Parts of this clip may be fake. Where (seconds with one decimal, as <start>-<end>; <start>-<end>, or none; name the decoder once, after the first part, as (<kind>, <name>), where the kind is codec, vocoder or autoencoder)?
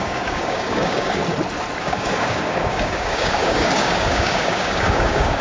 0.0-1.2 (codec, DAC); 1.8-5.4